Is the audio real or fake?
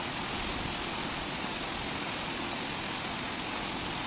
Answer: real